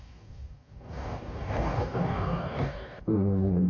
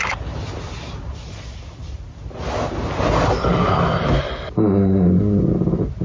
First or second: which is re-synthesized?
first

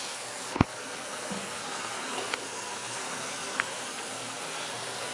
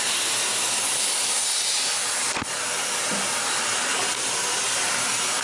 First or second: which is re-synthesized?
first